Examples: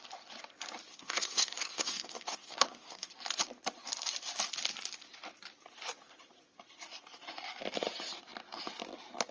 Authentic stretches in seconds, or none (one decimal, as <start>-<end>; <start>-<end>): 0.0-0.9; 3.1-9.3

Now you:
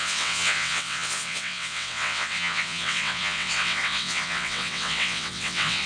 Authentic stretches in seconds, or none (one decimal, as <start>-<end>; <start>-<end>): none

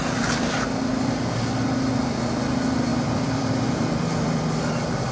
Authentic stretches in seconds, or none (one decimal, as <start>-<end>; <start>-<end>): 0.0-0.9; 1.4-2.9

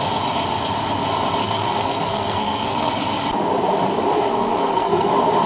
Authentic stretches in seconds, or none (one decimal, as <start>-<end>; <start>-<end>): 0.0-1.4; 2.9-4.3; 5.1-5.5

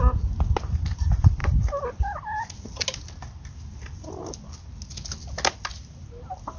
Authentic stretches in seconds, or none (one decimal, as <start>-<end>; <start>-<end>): 0.0-6.6

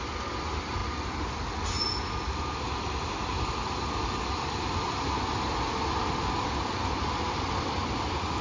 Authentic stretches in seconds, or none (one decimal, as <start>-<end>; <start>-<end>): 0.0-8.4